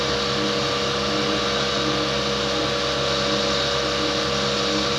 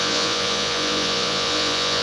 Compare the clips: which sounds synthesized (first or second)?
second